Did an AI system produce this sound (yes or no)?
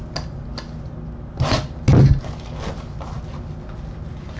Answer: no